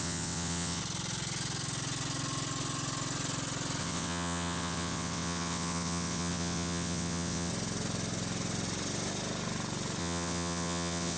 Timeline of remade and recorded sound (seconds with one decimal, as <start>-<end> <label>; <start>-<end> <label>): 0.0-0.8 remade; 0.8-3.8 recorded; 3.8-7.5 remade; 7.5-10.0 recorded; 10.0-11.2 remade